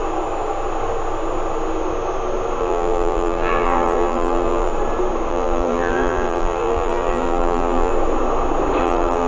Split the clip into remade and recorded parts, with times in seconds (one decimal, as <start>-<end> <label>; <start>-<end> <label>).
0.0-2.6 recorded; 2.6-4.7 remade; 4.7-5.3 recorded; 5.3-7.9 remade; 7.9-8.8 recorded; 8.8-9.3 remade